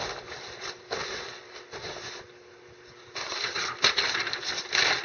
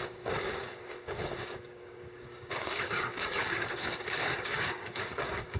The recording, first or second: first